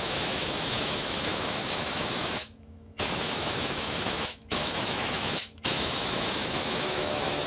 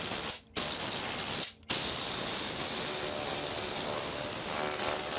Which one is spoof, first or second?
first